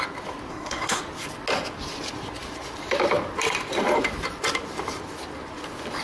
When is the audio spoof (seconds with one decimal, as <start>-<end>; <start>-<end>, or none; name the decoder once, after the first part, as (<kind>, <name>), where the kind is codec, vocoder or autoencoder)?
0.5-1.0 (codec, SNAC)

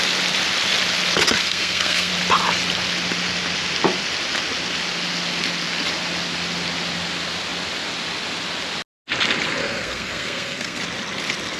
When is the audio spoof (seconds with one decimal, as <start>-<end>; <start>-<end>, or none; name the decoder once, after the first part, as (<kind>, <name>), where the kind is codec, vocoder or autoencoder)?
1.4-2.1 (codec, SNAC); 9.6-10.8